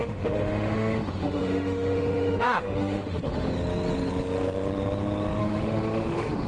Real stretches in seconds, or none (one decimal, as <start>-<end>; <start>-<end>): 3.5-5.4